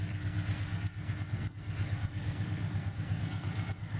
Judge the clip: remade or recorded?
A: remade